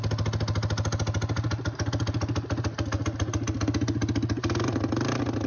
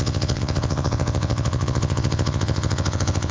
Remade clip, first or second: second